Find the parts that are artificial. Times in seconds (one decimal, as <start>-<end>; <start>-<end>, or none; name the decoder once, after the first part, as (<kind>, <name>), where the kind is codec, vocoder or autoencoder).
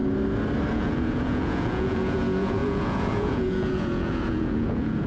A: 0.7-5.1 (vocoder, Vocos)